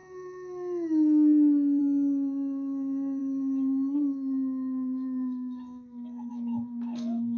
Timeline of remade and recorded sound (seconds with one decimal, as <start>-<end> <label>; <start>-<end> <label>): 0.0-1.8 recorded; 1.8-7.4 remade